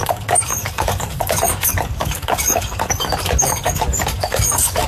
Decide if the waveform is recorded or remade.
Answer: remade